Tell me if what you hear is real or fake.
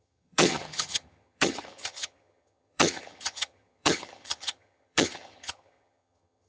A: fake